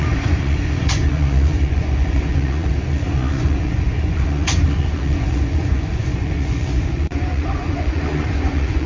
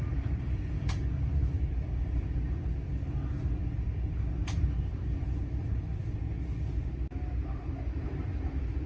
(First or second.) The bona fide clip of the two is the second